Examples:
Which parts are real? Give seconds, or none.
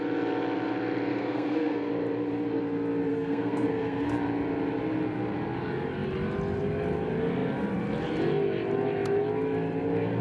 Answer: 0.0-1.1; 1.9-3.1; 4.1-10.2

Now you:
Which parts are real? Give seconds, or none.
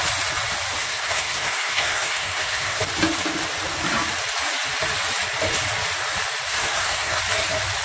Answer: 0.0-0.8; 2.8-6.5; 7.2-7.8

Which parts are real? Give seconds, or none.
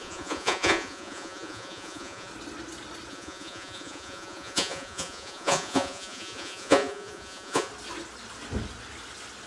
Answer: 2.3-3.1; 7.7-9.5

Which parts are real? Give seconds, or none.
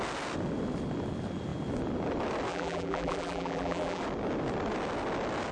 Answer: 0.0-2.5; 4.0-5.5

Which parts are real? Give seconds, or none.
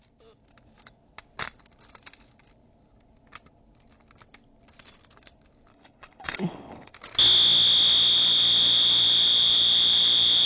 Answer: 0.0-5.7; 6.9-10.5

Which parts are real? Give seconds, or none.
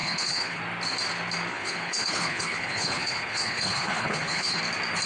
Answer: 0.6-1.5; 4.6-5.1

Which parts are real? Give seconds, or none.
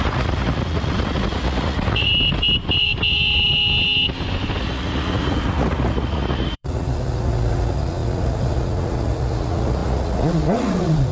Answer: 2.1-4.6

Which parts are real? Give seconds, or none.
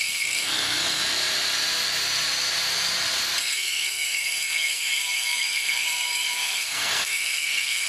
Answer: 1.0-3.4